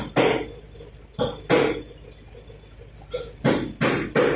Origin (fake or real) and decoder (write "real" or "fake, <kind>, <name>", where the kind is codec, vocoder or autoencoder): real